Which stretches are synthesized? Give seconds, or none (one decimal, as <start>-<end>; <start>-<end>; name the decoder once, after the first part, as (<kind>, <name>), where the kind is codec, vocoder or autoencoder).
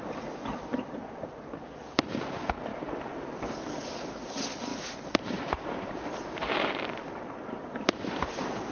0.7-1.5 (vocoder, BigVGAN v2); 2.7-3.8; 4.7-6.8